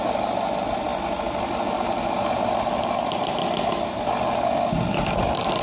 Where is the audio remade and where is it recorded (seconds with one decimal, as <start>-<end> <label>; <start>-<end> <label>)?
0.0-5.6 recorded